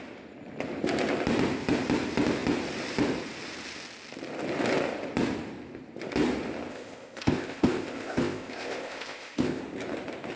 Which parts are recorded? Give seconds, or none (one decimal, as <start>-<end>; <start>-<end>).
0.0-6.7; 9.6-10.4